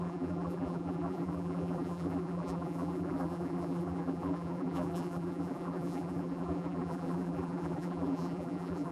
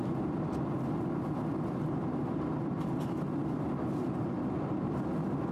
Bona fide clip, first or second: second